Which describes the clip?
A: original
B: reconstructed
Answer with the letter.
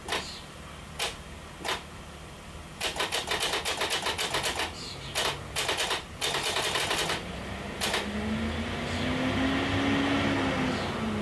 A